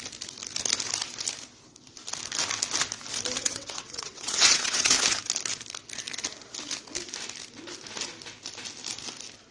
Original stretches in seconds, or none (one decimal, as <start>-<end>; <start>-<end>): 0.0-3.4; 4.9-9.5